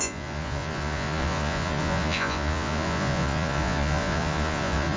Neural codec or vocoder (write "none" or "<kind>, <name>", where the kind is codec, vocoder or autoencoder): vocoder, Vocos